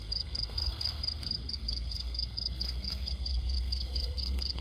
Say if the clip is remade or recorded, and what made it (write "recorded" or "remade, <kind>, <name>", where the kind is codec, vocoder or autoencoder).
remade, codec, SNAC